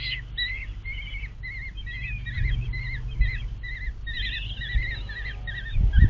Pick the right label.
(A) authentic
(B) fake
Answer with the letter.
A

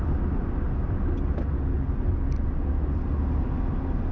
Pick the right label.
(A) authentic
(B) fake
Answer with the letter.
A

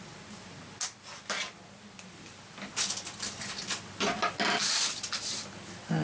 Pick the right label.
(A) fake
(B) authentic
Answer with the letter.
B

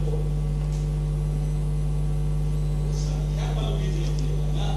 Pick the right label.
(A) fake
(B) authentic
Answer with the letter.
B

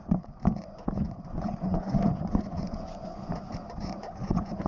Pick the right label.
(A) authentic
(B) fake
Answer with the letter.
B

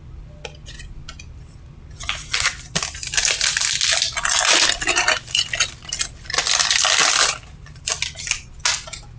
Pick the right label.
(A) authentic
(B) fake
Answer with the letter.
A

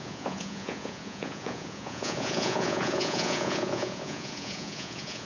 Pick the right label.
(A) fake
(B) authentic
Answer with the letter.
A